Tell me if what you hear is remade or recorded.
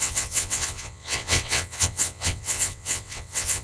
remade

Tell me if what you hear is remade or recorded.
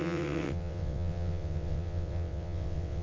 remade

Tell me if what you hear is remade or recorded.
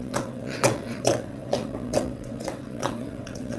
remade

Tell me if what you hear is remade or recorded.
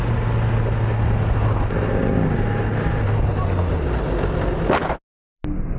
recorded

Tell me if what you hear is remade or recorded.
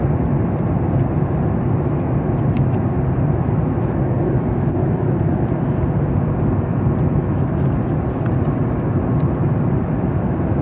recorded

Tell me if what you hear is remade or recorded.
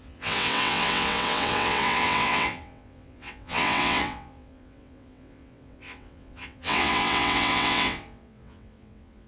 remade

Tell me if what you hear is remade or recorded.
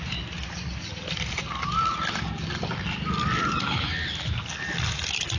recorded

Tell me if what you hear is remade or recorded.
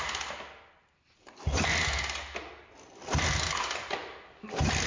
recorded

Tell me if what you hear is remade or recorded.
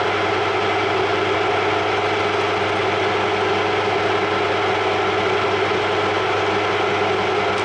recorded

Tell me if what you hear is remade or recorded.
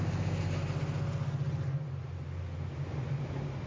recorded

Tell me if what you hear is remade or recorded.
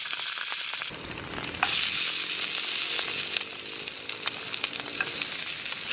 recorded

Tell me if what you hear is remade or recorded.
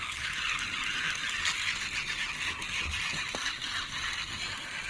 recorded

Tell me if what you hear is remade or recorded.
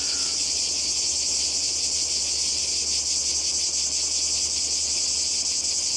recorded